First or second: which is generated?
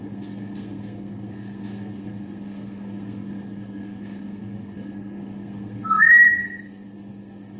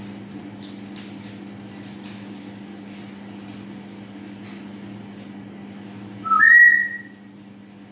first